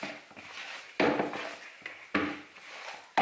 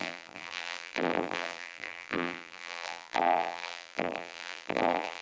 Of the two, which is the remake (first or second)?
second